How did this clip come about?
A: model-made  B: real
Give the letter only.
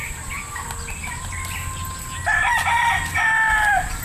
B